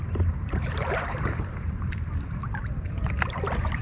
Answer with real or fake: fake